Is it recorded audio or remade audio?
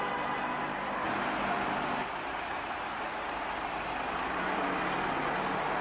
recorded